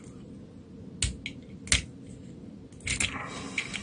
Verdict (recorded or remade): recorded